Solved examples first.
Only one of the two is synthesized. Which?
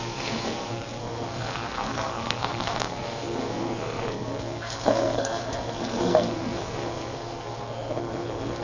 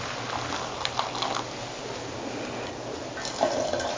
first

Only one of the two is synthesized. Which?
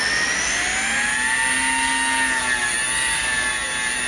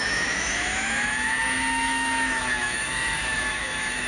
second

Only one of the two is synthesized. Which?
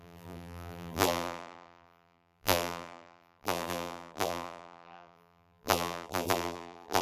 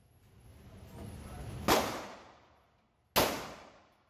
first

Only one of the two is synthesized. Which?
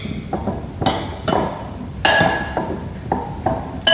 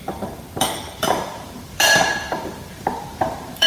second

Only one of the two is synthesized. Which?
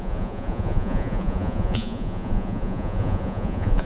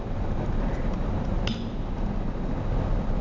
first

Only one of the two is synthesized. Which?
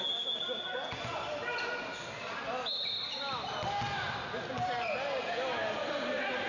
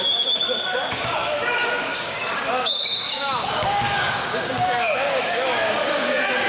second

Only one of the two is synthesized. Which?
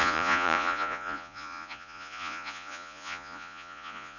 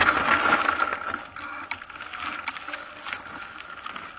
first